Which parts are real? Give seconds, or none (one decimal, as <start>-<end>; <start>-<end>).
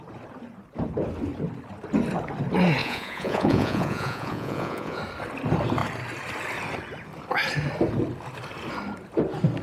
0.0-2.8; 5.0-9.6